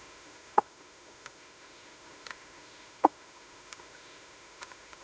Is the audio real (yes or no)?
no